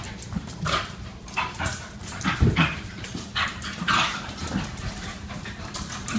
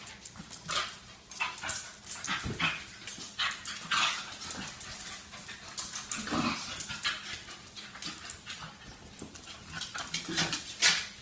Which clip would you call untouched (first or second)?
second